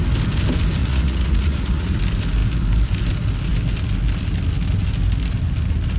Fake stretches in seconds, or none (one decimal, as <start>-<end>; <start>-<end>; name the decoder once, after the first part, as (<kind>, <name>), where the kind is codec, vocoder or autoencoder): 0.8-2.0 (vocoder, Vocos)